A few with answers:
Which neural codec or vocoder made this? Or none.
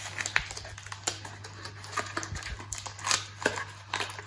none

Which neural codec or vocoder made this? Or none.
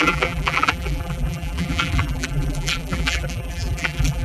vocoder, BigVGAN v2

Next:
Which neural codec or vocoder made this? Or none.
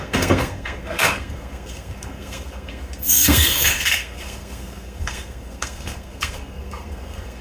codec, SNAC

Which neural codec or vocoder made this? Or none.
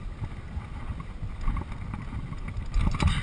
none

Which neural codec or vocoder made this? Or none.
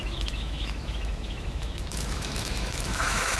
autoencoder, DAC-VAE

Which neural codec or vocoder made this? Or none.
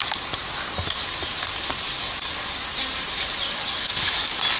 none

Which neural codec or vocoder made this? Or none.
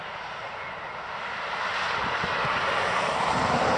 none